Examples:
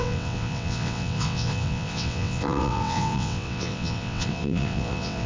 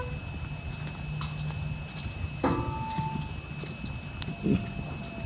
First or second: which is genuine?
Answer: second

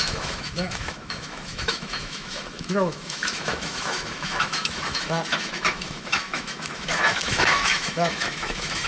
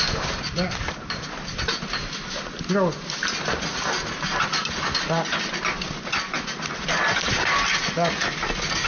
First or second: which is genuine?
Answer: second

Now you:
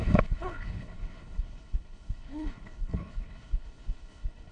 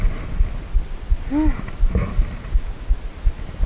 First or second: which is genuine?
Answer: second